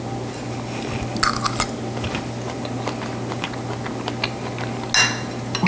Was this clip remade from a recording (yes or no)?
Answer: no